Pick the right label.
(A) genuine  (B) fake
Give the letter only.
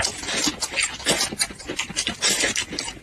A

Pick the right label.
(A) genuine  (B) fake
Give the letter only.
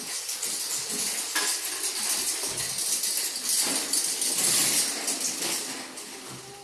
A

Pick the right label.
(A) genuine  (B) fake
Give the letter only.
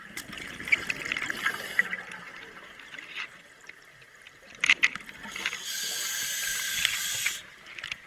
B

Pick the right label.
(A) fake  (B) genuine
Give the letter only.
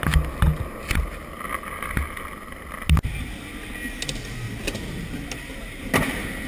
B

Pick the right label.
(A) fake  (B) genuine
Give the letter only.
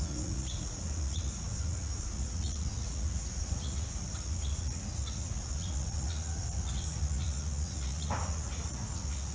A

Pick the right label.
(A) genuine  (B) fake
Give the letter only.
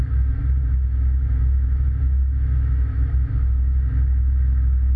B